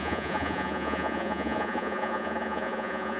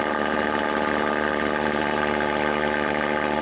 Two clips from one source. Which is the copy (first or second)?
first